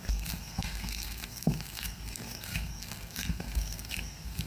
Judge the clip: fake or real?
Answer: fake